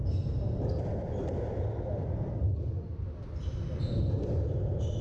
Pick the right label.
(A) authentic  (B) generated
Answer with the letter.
A